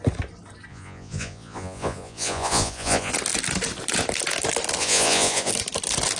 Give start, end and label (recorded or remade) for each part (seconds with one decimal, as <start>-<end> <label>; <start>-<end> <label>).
0.0-0.7 recorded; 0.7-3.1 remade; 3.1-4.8 recorded; 4.8-5.5 remade; 5.5-6.2 recorded